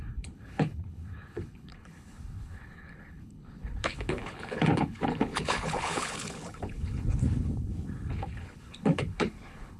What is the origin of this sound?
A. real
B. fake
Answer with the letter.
B